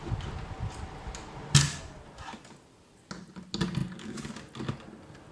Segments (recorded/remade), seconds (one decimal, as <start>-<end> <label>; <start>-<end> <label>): 0.0-5.3 recorded